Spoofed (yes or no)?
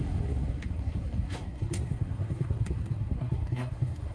yes